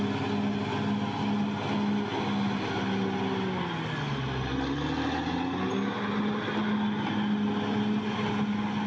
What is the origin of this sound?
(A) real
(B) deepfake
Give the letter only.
A